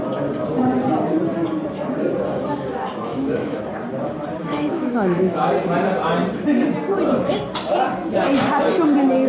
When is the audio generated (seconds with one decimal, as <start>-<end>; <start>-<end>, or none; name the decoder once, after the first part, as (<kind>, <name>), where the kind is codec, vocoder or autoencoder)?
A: 3.1-3.6 (autoencoder, DAC-VAE); 4.4-5.5

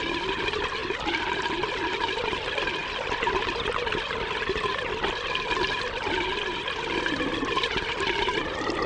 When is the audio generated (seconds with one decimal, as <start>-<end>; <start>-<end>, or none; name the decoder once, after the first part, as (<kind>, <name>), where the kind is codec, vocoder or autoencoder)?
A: none

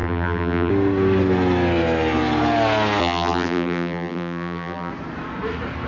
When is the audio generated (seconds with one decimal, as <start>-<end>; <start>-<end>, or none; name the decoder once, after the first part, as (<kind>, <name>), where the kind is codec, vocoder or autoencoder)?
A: 0.0-0.7 (vocoder, BigVGAN v2); 3.0-4.9

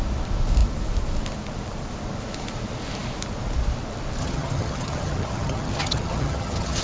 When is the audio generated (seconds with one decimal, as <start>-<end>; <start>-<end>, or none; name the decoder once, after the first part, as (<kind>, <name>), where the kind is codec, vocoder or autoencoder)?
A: 4.2-6.8 (vocoder, HiFi-GAN)